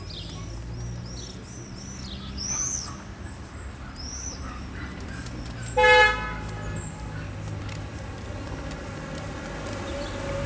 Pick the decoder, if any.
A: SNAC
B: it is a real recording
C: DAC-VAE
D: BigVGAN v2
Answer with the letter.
B